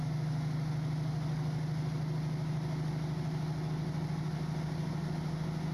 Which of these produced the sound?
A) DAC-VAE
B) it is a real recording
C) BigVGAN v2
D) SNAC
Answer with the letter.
B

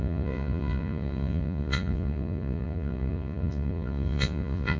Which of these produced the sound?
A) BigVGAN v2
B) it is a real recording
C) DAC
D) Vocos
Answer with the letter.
D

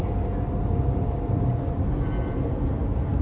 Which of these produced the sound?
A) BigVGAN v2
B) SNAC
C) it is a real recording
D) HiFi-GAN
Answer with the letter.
C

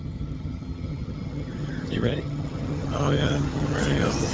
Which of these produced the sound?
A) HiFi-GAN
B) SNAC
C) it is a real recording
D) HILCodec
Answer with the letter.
A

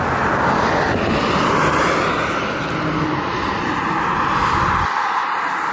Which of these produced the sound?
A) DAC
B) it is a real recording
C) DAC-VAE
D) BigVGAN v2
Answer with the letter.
B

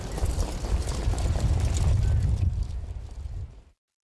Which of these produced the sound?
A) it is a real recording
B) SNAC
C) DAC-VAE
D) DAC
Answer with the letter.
A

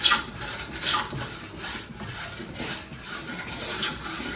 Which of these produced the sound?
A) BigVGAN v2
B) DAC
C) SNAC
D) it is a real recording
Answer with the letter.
D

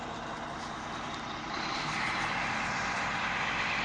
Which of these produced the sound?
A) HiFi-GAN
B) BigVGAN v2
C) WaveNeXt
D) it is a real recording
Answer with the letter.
D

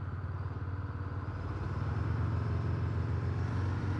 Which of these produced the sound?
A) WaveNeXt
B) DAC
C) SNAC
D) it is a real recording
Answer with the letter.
D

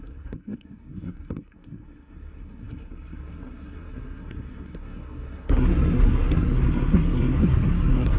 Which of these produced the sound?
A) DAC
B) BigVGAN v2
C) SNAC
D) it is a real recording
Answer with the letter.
C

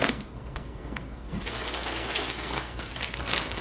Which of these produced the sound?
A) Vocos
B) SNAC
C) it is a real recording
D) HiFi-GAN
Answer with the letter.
B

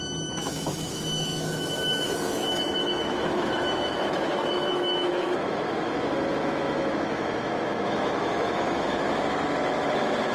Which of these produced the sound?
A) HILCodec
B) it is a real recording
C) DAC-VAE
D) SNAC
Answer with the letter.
C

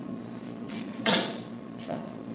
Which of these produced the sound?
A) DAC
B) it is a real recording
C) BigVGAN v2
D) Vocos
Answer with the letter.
D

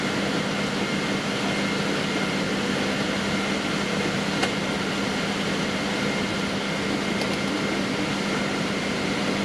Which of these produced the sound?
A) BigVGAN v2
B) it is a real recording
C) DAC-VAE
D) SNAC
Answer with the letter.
B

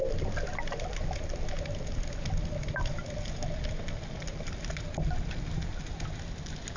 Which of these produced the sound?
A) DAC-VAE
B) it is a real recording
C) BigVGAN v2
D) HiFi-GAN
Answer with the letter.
B